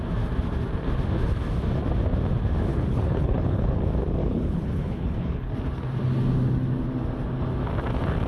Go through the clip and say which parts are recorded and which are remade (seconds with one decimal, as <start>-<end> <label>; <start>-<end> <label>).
0.0-2.7 recorded; 2.7-3.8 remade; 3.8-4.2 recorded; 4.2-5.5 remade; 5.5-8.3 recorded